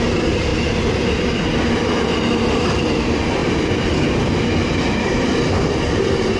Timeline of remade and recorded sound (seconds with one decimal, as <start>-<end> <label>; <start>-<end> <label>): 0.0-6.4 recorded